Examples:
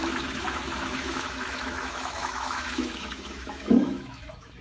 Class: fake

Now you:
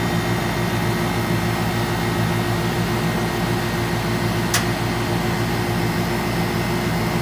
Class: real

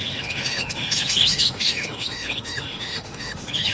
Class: fake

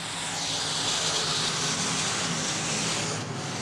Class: real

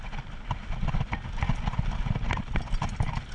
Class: real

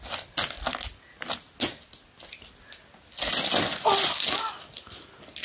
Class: real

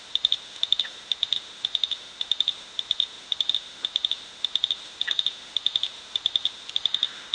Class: fake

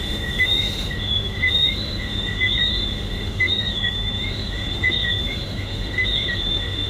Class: fake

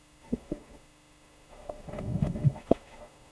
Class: fake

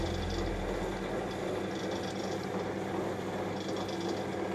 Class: real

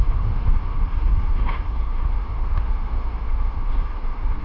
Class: fake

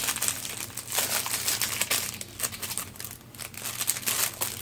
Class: real